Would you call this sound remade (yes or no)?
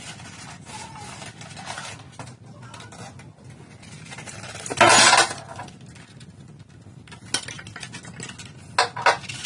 no